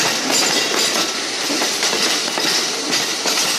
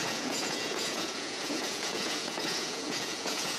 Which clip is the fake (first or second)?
second